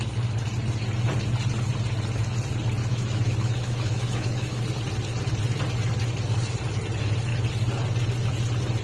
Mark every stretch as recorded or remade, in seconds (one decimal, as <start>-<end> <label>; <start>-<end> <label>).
0.0-2.8 recorded; 2.8-4.6 remade; 4.6-8.8 recorded